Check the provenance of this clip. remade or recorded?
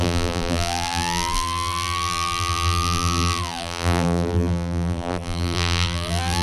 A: remade